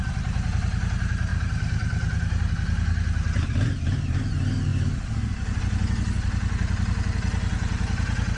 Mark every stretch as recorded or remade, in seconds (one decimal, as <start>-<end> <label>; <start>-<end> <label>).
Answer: 0.0-1.3 recorded; 1.3-2.5 remade; 2.5-4.7 recorded; 4.7-5.6 remade; 5.6-8.4 recorded